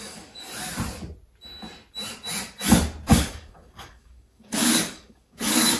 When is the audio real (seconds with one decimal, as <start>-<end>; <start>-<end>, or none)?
0.5-3.1